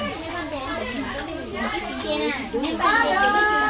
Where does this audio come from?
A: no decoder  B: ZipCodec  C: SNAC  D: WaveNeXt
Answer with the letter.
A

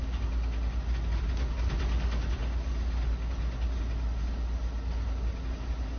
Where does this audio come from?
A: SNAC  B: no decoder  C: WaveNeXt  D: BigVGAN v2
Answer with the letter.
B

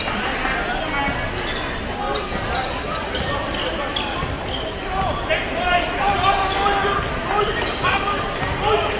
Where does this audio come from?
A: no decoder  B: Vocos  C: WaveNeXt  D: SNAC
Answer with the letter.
A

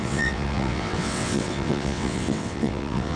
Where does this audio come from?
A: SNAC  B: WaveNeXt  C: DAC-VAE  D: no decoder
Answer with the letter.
B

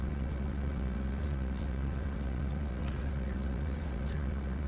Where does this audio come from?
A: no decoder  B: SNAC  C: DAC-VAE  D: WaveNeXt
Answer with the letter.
D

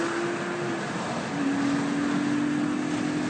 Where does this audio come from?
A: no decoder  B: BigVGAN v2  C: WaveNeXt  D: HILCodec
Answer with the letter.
A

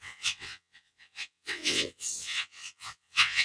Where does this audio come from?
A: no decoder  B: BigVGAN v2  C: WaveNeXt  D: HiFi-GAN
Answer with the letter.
C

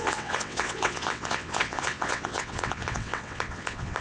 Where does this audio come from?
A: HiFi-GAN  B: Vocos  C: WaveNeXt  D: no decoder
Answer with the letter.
C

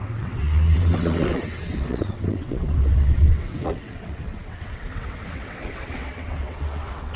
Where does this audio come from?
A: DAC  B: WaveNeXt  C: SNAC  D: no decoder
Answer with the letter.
B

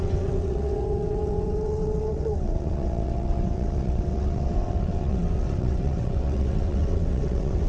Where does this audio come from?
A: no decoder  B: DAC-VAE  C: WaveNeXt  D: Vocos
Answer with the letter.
C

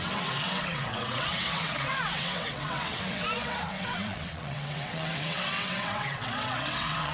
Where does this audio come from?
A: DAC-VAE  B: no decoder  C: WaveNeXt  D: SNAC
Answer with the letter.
C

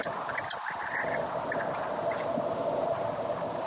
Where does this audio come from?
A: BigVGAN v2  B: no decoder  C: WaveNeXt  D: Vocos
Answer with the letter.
B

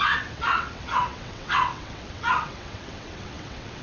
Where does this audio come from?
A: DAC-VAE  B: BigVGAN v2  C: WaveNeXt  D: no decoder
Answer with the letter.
C